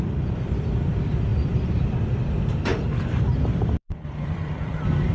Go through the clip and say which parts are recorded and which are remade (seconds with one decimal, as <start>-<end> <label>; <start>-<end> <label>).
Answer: 0.0-2.7 remade; 2.7-3.2 recorded; 3.2-5.1 remade